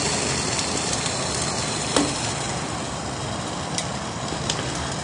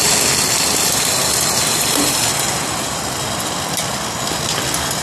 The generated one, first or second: first